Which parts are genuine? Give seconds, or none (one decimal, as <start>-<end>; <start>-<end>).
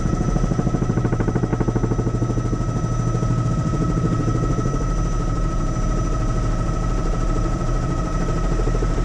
1.5-3.5